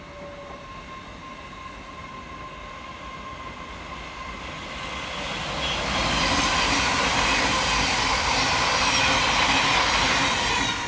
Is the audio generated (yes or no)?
no